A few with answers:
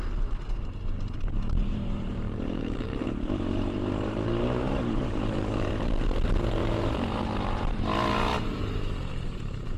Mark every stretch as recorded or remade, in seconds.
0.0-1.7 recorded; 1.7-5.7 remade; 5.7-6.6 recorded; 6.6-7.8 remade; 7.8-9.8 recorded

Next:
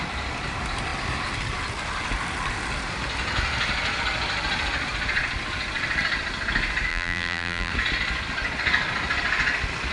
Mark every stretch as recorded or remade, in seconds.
0.0-6.9 recorded; 6.9-7.7 remade; 7.7-9.9 recorded